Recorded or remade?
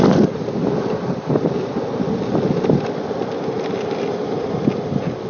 recorded